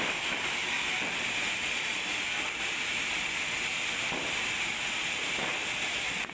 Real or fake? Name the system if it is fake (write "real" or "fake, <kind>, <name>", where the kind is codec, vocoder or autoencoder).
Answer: real